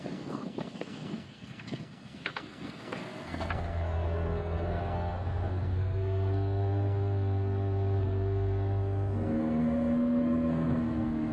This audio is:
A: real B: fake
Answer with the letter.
B